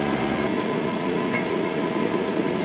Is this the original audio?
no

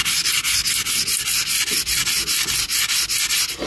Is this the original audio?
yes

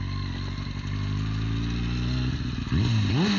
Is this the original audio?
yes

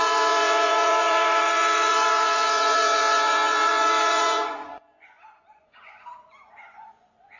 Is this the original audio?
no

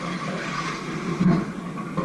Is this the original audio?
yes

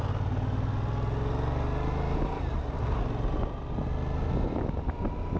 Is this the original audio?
yes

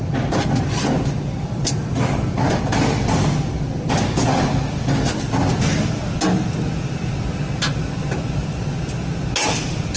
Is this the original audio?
yes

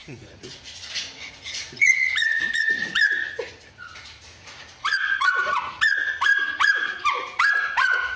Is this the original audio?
no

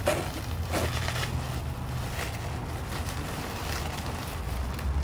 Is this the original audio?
yes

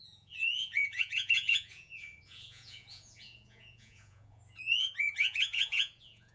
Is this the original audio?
no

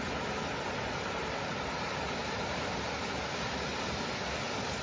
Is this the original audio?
yes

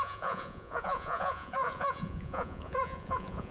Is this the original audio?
no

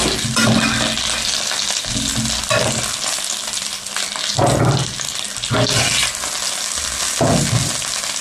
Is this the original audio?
yes